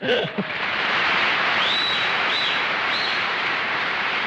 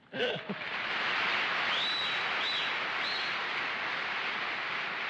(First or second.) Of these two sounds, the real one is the second